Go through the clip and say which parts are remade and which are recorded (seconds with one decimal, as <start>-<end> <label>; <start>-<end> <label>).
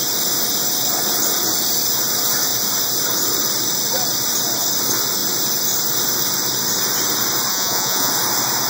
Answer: 0.0-7.5 recorded; 7.5-8.1 remade; 8.1-8.7 recorded